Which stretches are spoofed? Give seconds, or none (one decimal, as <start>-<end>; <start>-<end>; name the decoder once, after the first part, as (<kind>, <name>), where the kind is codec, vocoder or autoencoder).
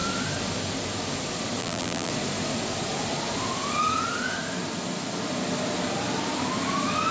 1.6-2.1 (vocoder, BigVGAN v2)